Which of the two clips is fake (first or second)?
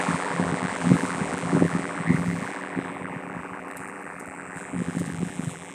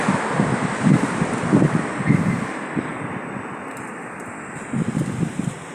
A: first